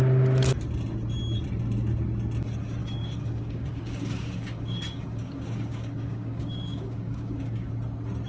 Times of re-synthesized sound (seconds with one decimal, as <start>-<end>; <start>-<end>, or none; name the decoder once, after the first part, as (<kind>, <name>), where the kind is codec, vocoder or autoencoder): 2.8-7.7 (codec, DAC)